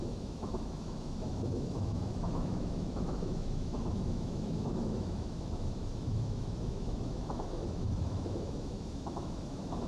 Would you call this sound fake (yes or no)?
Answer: yes